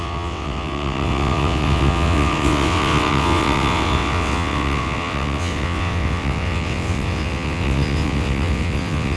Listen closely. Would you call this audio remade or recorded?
remade